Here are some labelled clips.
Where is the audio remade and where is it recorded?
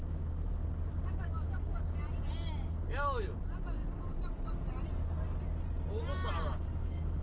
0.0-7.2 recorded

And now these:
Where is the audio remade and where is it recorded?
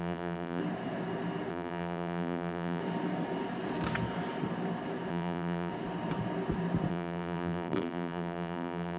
0.0-0.6 remade; 0.6-1.5 recorded; 1.5-2.8 remade; 2.8-5.1 recorded; 5.1-5.7 remade; 5.7-6.9 recorded; 6.9-9.0 remade